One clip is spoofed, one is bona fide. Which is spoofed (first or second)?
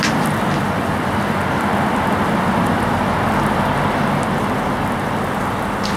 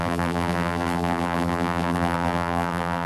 second